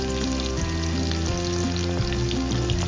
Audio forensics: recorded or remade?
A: recorded